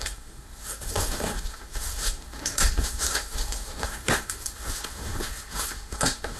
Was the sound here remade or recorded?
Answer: remade